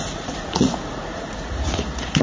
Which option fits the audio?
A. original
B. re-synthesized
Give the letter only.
B